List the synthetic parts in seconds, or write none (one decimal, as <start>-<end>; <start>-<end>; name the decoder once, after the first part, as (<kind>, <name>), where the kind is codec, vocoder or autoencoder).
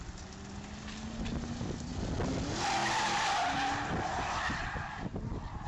none